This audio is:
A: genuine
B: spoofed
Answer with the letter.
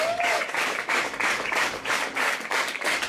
B